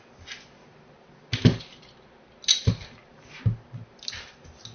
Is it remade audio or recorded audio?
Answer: recorded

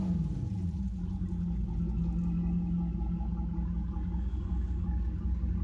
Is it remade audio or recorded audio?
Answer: recorded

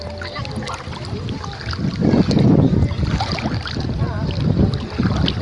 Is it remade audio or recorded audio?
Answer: recorded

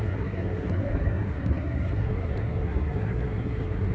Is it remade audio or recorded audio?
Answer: remade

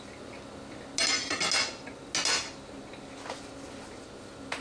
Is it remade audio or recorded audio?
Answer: recorded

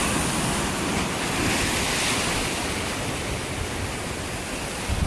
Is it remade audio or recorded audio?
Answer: recorded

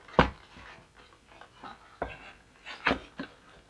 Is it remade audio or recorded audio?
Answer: recorded